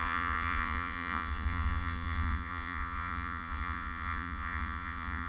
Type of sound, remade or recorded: remade